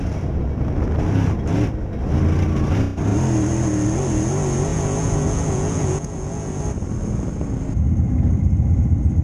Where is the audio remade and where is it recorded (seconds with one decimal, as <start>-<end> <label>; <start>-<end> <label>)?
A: 0.0-4.7 recorded; 4.7-6.6 remade; 6.6-9.2 recorded